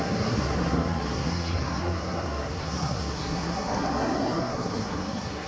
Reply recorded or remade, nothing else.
remade